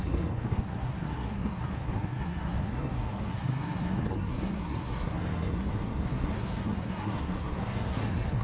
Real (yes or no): no